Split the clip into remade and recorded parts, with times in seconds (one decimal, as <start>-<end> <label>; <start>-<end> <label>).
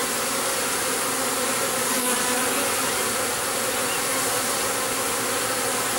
0.0-6.0 recorded